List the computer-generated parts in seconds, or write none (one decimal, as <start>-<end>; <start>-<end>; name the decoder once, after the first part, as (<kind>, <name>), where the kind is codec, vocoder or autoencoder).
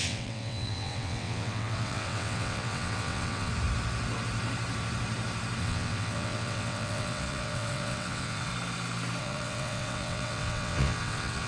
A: 0.0-3.5 (vocoder, WaveNeXt); 5.6-8.5; 9.2-11.5